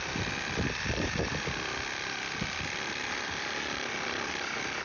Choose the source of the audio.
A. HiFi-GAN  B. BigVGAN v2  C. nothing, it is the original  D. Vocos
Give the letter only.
C